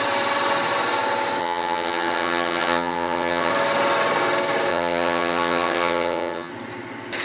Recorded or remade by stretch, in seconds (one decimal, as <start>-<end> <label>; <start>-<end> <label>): 0.0-1.4 recorded; 1.4-3.5 remade; 3.5-4.7 recorded; 4.7-6.5 remade; 6.5-7.2 recorded